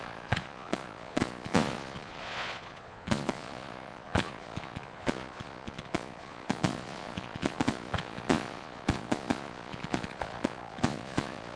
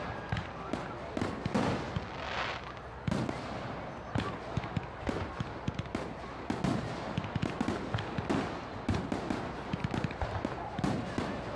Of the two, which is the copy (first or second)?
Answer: first